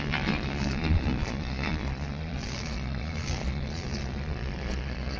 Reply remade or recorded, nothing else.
remade